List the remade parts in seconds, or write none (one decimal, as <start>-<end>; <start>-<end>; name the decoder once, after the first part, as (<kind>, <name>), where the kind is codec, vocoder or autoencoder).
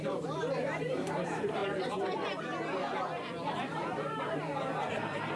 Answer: 0.0-1.6 (vocoder, BigVGAN v2); 3.5-5.4